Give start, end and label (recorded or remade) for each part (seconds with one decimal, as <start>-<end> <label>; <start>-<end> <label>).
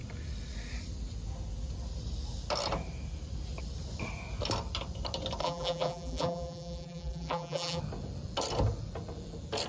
0.0-5.4 recorded; 5.4-7.8 remade; 7.8-9.7 recorded